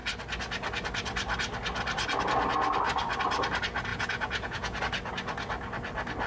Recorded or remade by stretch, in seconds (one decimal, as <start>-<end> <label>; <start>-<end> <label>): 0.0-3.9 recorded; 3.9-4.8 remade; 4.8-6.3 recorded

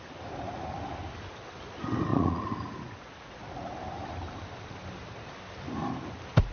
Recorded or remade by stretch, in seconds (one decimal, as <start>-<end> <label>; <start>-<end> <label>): 0.0-2.1 recorded; 2.1-3.4 remade; 3.4-6.5 recorded

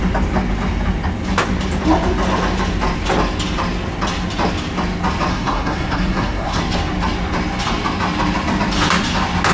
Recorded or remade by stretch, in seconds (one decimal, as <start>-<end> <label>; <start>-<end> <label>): 0.0-5.3 recorded; 5.3-6.6 remade; 6.6-9.5 recorded

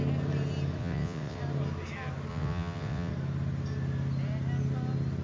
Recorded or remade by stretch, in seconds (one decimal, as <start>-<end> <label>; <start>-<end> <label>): 0.0-0.8 recorded; 0.8-1.4 remade; 1.4-2.3 recorded; 2.3-3.1 remade; 3.1-5.2 recorded